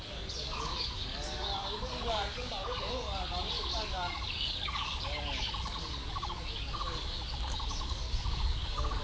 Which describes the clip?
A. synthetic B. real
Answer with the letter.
A